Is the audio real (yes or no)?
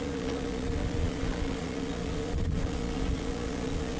no